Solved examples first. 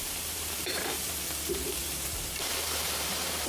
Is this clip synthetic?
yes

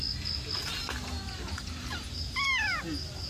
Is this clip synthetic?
no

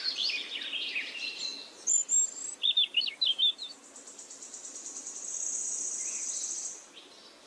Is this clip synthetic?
no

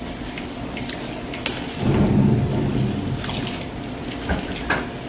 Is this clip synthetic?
no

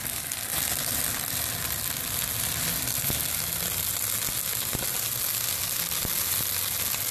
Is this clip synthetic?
no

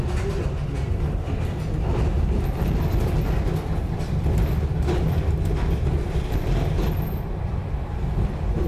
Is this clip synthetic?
no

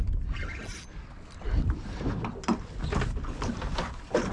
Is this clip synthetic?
no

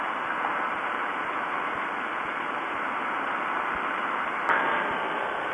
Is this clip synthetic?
yes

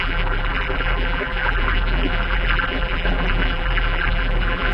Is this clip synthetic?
yes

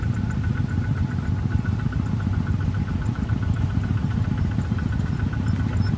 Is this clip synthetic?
no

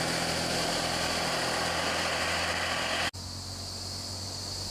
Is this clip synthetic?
no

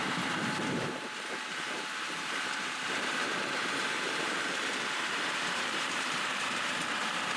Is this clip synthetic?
yes